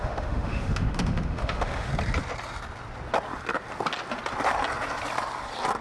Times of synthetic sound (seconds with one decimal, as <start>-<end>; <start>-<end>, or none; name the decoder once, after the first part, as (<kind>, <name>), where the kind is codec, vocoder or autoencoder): 0.0-1.9 (autoencoder, DAC-VAE)